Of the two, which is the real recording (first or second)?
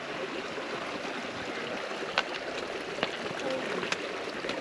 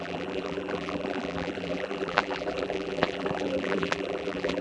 first